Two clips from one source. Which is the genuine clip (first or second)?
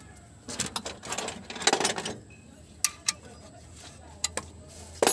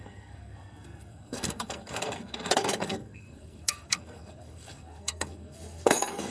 first